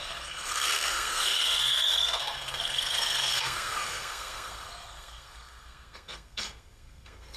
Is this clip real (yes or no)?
no